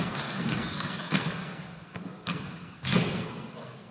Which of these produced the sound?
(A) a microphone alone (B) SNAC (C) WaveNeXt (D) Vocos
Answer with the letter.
B